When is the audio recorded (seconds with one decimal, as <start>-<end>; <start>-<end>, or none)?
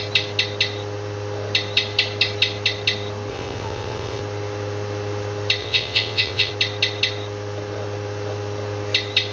0.0-3.3; 4.2-5.6; 6.5-9.3